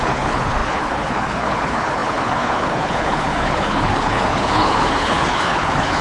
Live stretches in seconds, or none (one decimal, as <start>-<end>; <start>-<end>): none